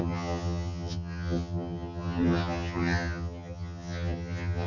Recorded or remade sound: remade